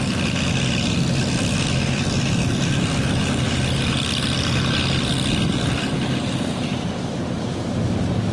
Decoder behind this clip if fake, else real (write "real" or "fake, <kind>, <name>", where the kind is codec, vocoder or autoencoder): real